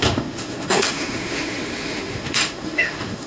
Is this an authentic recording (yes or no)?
no